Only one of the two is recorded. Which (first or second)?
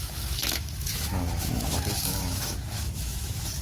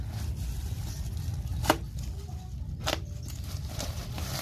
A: second